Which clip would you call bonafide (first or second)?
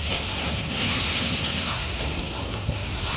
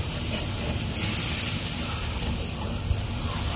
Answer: second